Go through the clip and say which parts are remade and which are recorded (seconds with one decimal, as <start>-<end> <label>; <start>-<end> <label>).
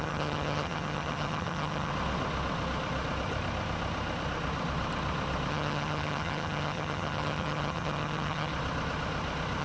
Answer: 0.0-1.9 remade; 1.9-5.5 recorded; 5.5-8.5 remade; 8.5-9.6 recorded